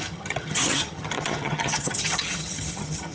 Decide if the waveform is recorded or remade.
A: remade